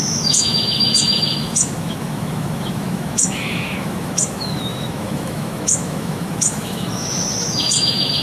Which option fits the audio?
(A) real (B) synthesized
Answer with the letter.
B